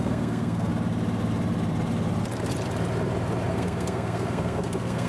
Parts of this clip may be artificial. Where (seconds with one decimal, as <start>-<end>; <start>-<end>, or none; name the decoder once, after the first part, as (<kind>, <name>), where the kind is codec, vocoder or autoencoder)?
0.0-0.7 (codec, SNAC); 3.5-5.1

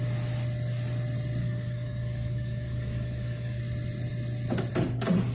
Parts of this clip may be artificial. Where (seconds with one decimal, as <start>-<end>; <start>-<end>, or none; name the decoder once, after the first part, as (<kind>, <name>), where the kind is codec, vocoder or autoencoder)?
1.4-3.6 (codec, DAC)

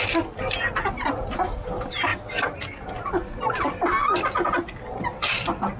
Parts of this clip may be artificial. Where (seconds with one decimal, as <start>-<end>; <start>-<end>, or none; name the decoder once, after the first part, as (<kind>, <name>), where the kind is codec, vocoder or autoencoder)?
none

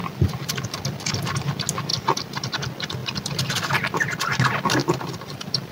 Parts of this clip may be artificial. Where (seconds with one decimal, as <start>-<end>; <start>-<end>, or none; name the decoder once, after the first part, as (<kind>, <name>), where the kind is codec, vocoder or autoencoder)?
0.0-0.5 (vocoder, BigVGAN v2); 1.9-2.5; 4.8-5.7

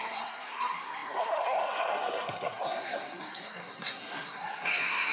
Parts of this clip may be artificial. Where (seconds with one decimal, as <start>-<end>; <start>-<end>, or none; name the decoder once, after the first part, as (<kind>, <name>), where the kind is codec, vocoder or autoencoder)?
0.0-5.1 (codec, SNAC)